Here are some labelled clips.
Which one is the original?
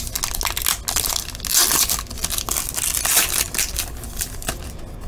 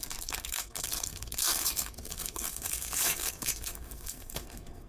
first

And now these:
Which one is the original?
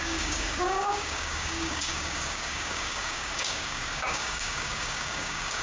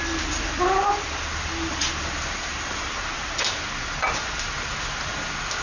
second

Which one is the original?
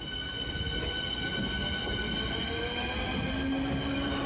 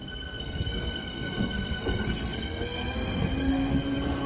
first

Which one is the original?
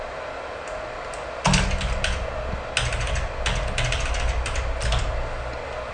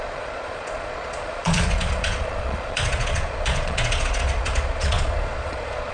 first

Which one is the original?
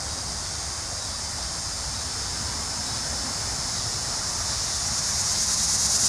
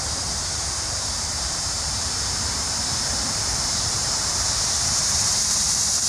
first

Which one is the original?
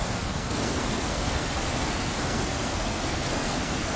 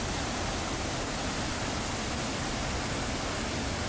second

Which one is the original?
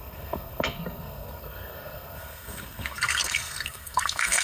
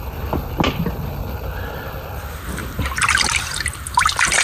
second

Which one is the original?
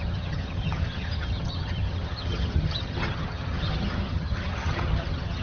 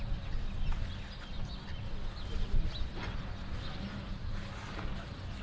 second